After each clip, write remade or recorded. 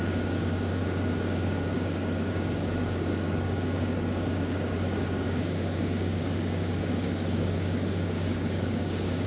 remade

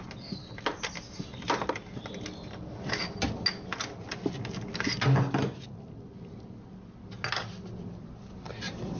recorded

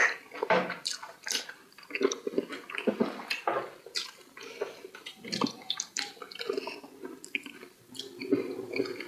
remade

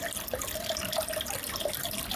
recorded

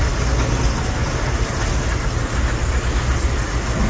recorded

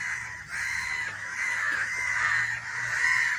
recorded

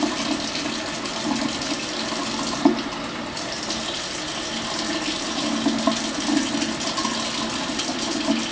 recorded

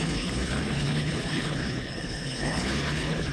remade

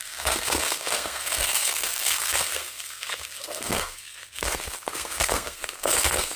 remade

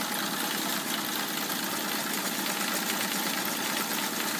recorded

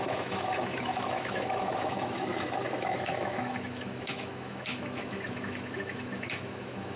remade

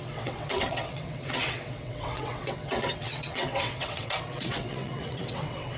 remade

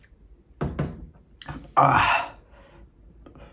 recorded